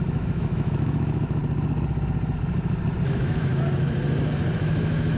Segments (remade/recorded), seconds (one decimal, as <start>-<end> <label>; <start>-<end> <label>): 0.0-1.4 remade; 1.4-3.1 recorded; 3.1-3.5 remade; 3.5-4.6 recorded; 4.6-5.2 remade